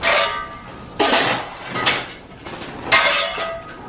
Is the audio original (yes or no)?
yes